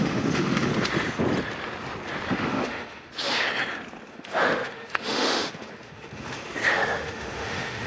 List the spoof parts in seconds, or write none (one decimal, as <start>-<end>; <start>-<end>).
0.0-0.7; 2.3-3.1; 4.1-7.9